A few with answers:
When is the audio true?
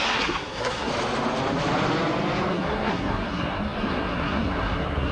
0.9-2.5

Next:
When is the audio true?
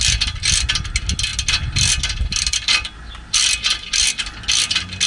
0.0-5.1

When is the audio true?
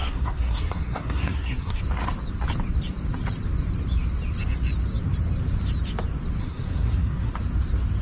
1.8-6.4; 7.3-8.0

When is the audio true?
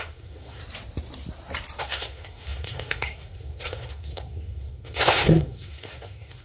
0.6-1.8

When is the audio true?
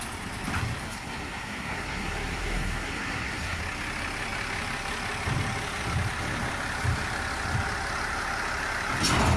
0.0-0.8; 3.6-9.4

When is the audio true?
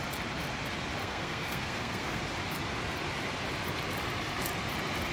0.0-1.0; 2.2-5.1